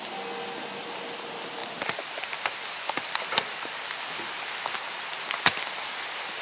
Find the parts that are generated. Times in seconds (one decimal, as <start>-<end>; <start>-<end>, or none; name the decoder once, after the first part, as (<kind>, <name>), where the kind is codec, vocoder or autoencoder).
none